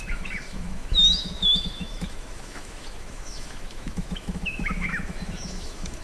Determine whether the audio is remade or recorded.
remade